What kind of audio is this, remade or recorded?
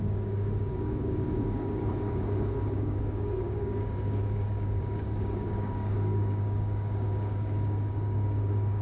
remade